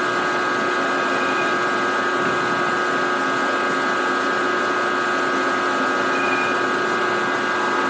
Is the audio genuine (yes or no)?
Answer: yes